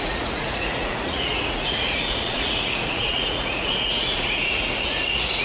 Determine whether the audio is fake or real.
fake